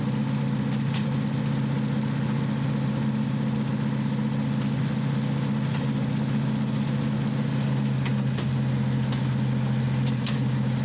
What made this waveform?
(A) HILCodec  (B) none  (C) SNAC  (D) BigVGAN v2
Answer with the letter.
B